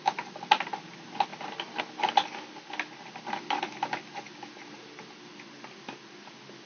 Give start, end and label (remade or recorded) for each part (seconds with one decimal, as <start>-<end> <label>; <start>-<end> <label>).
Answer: 0.0-6.7 recorded